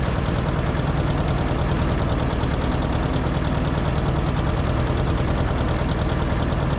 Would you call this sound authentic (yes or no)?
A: yes